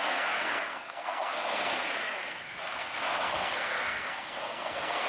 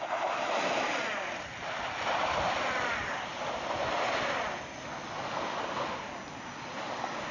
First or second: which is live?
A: second